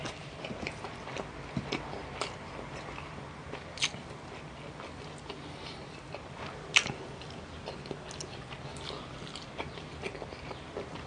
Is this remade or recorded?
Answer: recorded